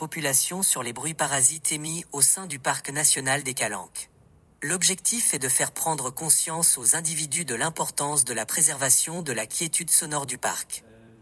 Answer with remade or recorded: remade